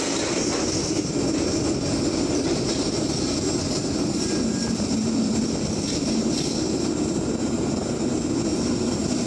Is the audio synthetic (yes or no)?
no